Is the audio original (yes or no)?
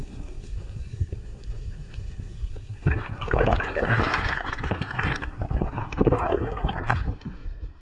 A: no